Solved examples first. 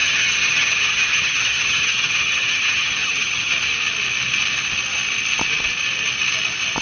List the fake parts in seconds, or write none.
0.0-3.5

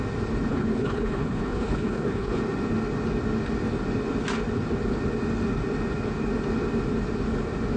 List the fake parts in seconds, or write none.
0.5-2.4

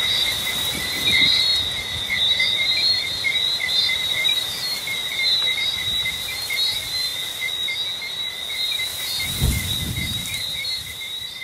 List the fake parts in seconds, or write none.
0.0-1.5; 2.1-7.1; 8.5-8.9; 9.5-11.4

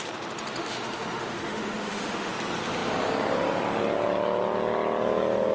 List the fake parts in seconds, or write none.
0.6-2.3

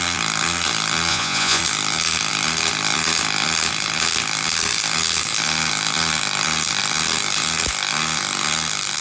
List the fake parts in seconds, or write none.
1.1-1.6

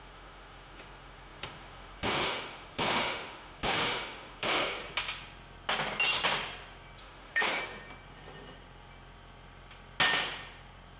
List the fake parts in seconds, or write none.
0.0-4.8; 7.0-7.6

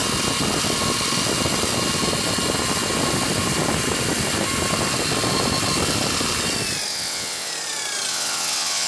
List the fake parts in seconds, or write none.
6.9-7.5; 8.1-8.9

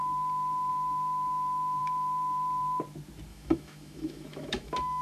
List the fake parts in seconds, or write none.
3.3-5.0